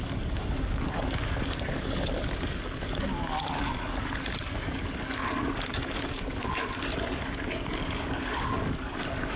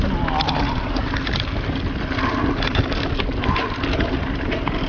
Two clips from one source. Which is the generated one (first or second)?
first